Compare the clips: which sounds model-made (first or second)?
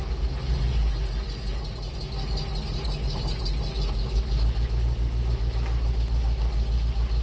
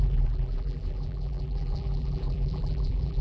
second